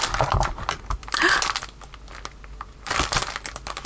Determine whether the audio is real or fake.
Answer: real